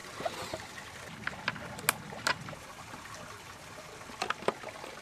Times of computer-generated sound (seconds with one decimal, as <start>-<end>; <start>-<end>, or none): none